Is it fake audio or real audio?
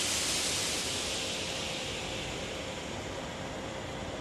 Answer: real